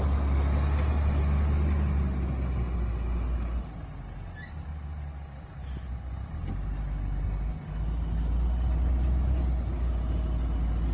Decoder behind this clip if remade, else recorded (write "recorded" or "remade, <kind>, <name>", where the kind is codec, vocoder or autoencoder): recorded